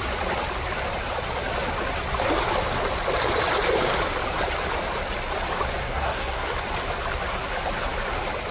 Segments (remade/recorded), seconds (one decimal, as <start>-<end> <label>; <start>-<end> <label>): 0.0-5.8 recorded; 5.8-6.5 remade; 6.5-8.5 recorded